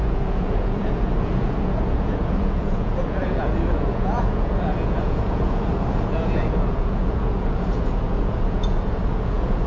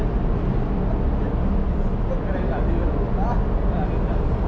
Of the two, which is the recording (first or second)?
second